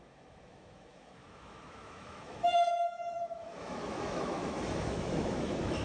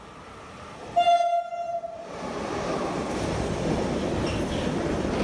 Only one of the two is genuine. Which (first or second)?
second